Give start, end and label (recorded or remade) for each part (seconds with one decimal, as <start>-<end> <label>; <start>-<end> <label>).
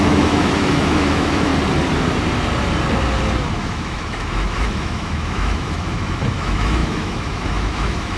0.0-1.5 remade; 1.5-3.5 recorded; 3.5-8.2 remade